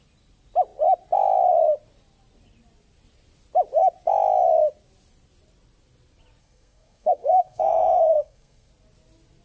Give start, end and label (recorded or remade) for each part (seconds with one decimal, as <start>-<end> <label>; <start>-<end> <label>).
0.0-6.4 recorded; 6.4-8.7 remade; 8.7-9.4 recorded